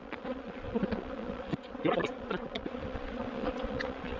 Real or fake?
fake